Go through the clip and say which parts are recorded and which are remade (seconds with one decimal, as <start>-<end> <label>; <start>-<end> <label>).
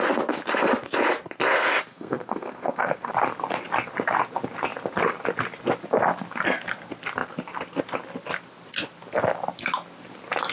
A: 0.0-1.9 recorded; 1.9-3.1 remade; 3.1-10.5 recorded